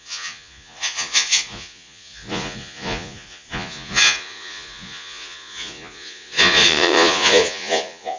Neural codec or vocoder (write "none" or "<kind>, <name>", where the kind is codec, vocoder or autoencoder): vocoder, Vocos